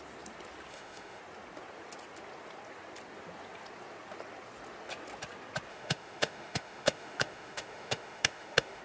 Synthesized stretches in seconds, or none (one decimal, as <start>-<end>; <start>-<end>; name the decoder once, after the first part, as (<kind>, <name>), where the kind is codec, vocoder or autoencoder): 0.7-1.2 (autoencoder, DAC-VAE); 5.7-8.8